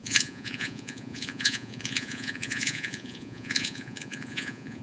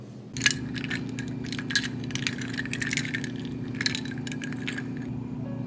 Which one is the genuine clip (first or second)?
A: second